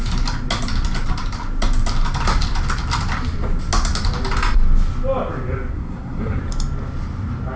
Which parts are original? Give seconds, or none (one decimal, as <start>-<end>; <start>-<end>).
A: 0.0-5.7; 6.4-7.6